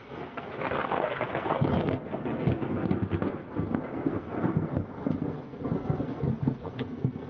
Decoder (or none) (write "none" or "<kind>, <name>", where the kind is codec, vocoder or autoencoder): codec, SNAC